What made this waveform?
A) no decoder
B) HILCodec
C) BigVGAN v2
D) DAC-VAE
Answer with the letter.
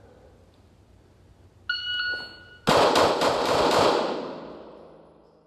A